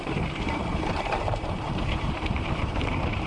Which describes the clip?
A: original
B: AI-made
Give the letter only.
B